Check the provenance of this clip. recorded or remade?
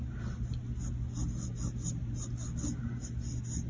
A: recorded